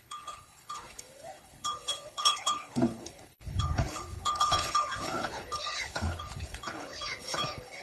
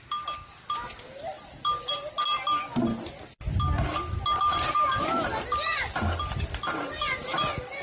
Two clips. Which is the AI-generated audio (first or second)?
first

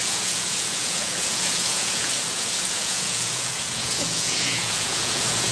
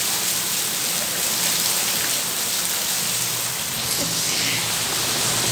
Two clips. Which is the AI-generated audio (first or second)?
first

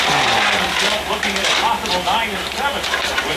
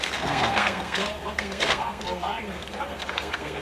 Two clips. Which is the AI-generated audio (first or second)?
second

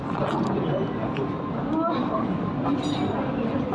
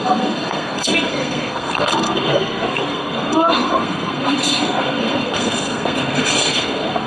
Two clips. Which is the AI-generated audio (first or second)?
second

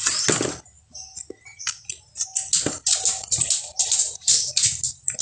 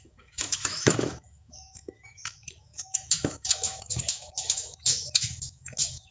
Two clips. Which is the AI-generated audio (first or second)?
second